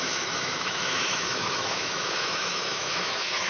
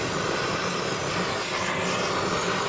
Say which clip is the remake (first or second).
first